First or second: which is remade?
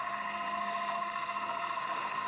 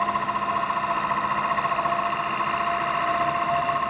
first